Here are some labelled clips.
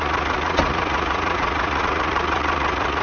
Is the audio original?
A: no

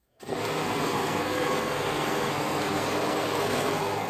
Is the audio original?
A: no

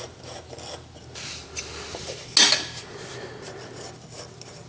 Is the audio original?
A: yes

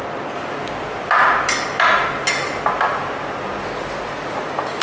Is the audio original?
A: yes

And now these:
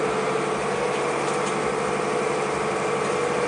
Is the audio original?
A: yes